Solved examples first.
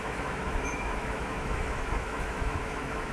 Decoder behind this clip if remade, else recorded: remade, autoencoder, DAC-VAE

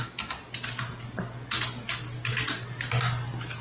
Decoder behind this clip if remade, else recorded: recorded